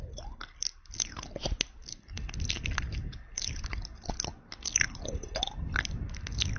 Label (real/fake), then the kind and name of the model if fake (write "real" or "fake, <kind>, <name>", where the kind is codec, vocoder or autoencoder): real